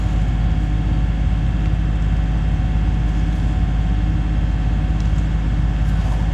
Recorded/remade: recorded